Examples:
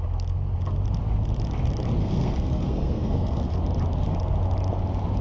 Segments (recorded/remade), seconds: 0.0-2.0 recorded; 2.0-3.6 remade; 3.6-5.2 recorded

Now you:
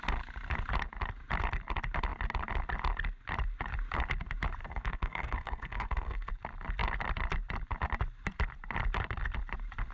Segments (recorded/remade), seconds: 0.0-4.6 recorded; 4.6-6.3 remade; 6.3-9.9 recorded

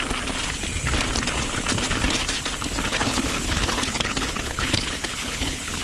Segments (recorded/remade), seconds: 0.0-2.9 recorded; 2.9-5.8 remade

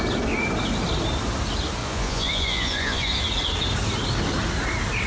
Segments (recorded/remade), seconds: 0.0-1.8 recorded; 1.8-3.2 remade; 3.2-5.1 recorded

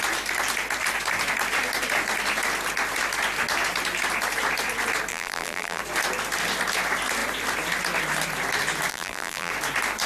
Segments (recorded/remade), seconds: 0.0-5.1 recorded; 5.1-5.8 remade; 5.8-8.9 recorded; 8.9-9.5 remade; 9.5-10.1 recorded

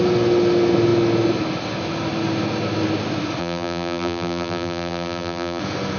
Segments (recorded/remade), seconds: 0.0-3.4 recorded; 3.4-5.6 remade; 5.6-6.0 recorded

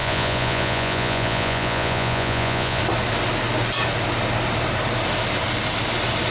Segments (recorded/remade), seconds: 0.0-2.8 remade; 2.8-6.3 recorded

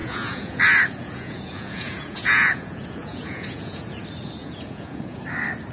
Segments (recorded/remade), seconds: 0.0-0.6 remade; 0.6-1.0 recorded; 1.0-4.0 remade; 4.0-4.4 recorded; 4.4-5.2 remade; 5.2-5.7 recorded